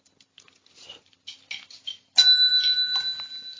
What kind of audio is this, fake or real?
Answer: real